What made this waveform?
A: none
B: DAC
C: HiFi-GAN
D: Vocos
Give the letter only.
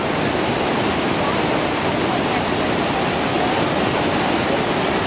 A